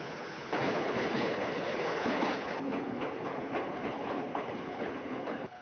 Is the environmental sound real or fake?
fake